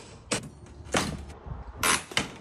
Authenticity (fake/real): real